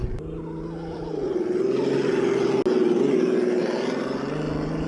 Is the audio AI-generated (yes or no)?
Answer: no